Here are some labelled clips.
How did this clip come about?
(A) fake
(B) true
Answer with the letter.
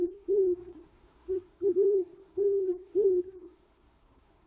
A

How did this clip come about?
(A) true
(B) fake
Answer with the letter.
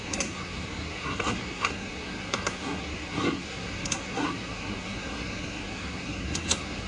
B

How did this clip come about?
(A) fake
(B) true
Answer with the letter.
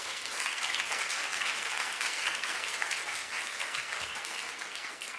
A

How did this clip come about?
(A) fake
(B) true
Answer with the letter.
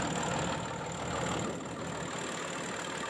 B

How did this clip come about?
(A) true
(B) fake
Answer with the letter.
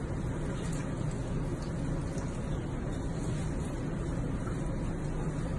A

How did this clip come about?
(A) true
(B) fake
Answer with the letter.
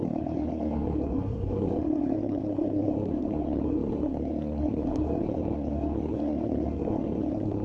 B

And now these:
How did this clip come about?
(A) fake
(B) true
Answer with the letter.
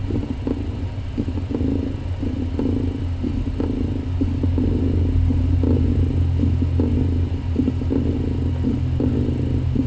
B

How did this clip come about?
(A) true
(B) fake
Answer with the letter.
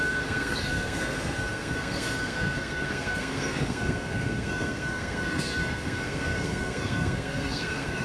B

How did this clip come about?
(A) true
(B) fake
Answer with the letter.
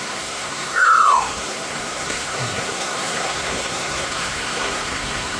B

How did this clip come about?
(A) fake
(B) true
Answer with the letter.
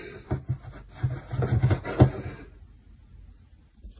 B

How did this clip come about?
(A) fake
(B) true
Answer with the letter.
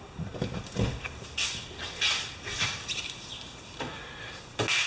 B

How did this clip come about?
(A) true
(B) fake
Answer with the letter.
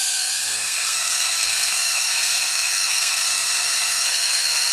B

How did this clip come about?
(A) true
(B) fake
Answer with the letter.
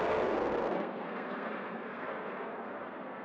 B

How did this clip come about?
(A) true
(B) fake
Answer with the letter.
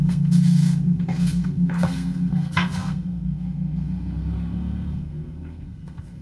B